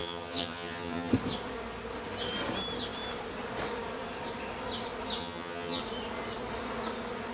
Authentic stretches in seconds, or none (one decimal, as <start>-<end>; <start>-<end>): 1.1-5.2; 5.8-7.3

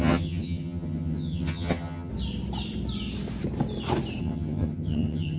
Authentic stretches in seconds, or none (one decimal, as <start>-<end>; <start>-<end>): 2.1-4.2

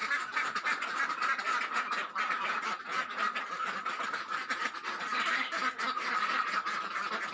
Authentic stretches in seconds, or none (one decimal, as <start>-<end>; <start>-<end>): 0.0-7.3

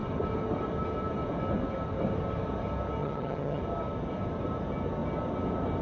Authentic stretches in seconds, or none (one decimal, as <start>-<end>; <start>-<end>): 0.0-3.0; 3.6-5.8